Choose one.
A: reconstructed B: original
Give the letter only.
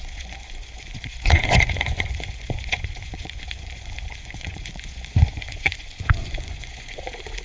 A